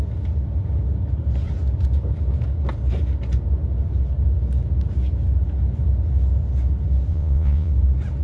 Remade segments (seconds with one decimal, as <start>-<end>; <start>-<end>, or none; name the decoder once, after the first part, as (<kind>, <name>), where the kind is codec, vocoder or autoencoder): 7.1-7.7 (vocoder, Vocos)